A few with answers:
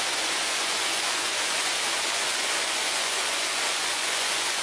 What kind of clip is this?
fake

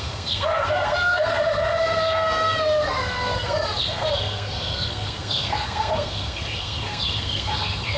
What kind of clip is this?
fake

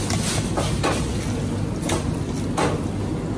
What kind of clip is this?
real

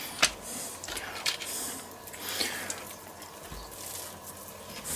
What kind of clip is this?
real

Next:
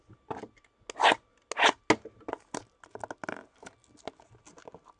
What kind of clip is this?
real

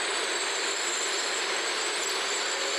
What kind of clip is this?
real